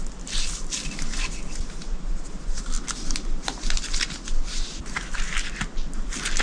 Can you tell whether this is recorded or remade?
recorded